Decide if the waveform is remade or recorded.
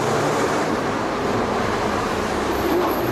remade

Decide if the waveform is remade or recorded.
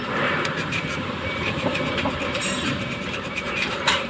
remade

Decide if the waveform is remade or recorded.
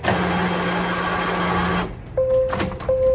recorded